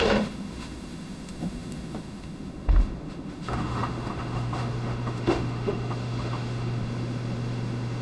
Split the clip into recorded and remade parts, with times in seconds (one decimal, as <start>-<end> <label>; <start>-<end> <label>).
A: 0.0-8.0 remade